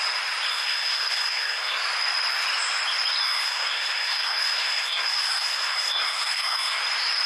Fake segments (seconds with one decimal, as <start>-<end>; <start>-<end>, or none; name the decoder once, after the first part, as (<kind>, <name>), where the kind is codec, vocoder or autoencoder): 0.5-1.8 (codec, SNAC); 3.2-6.8